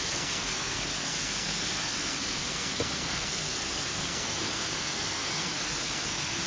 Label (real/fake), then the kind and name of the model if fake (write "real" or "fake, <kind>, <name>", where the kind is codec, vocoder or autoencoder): fake, codec, SNAC